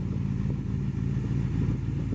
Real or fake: real